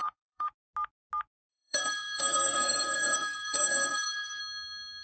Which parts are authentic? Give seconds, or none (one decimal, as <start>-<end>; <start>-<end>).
0.5-1.5; 4.4-5.0